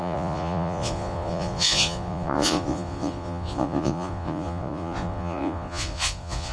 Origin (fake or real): fake